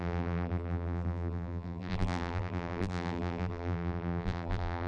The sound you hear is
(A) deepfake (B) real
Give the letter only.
A